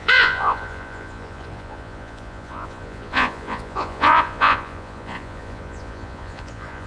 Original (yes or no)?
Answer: no